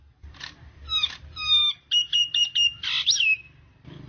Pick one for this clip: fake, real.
fake